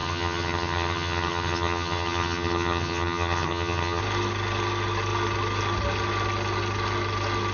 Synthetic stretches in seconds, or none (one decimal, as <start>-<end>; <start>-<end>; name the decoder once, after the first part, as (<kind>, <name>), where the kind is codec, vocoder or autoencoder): 0.0-4.0 (vocoder, HiFi-GAN)